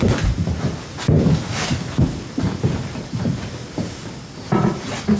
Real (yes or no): yes